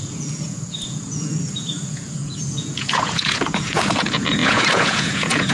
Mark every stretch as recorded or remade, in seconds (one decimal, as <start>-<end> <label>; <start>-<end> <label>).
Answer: 0.0-5.5 remade

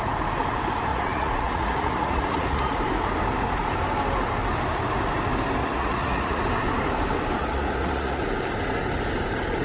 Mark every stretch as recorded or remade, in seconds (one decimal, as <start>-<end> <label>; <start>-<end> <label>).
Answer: 0.0-0.9 recorded; 0.9-2.8 remade; 2.8-5.6 recorded; 5.6-6.4 remade; 6.4-7.4 recorded; 7.4-8.2 remade; 8.2-9.6 recorded

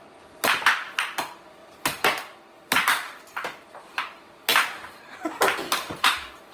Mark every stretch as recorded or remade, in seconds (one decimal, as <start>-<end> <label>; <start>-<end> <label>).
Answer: 0.0-6.5 recorded

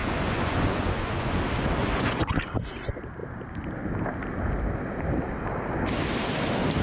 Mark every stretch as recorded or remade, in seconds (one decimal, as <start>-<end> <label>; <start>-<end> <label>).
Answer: 0.0-1.4 remade; 1.4-1.8 recorded; 1.8-2.4 remade; 2.4-6.8 recorded

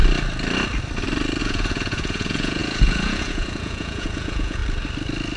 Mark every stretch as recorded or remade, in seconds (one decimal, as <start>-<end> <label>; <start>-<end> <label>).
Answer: 0.0-1.4 recorded; 1.4-4.6 remade; 4.6-5.4 recorded